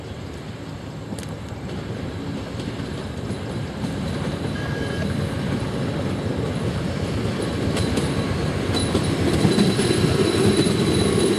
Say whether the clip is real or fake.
real